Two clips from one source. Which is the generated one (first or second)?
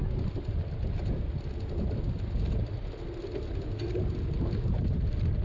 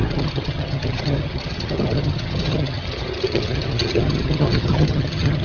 second